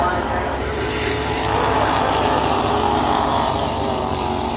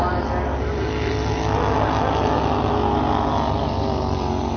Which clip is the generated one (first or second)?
first